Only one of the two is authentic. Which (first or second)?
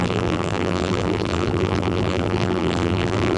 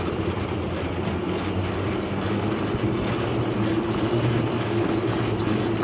second